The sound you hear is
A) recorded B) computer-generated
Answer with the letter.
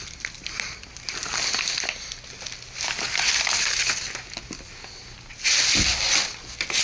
A